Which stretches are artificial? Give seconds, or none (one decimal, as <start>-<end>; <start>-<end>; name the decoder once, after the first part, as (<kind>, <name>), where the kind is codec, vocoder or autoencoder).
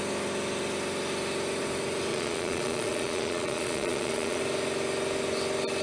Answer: 2.1-4.4 (vocoder, Vocos)